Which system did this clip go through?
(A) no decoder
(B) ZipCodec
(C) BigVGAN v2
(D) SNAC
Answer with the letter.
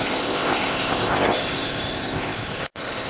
B